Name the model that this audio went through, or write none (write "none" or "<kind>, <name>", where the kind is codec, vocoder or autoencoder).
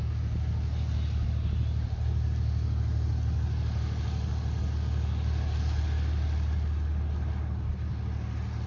none